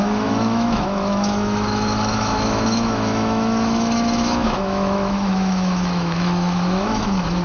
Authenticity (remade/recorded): remade